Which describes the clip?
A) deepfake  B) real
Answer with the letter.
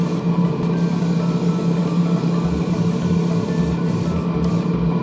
B